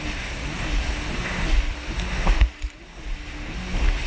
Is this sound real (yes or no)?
yes